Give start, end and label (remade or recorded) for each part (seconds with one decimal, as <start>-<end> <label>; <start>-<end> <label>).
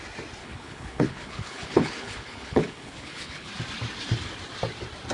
0.0-0.4 recorded; 0.4-3.5 remade; 3.5-5.1 recorded